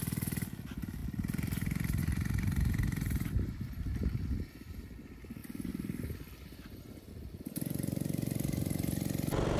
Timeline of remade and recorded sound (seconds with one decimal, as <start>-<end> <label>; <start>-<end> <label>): 0.0-1.0 recorded; 1.0-3.9 remade; 3.9-9.6 recorded